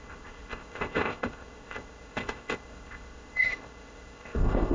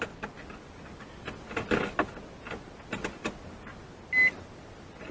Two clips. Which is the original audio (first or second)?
second